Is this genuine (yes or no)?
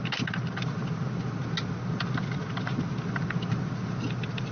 yes